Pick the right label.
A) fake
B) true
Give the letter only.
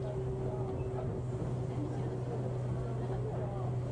B